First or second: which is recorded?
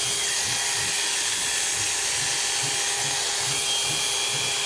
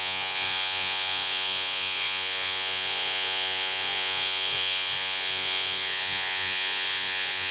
first